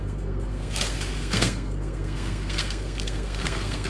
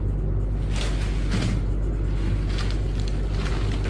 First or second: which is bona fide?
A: second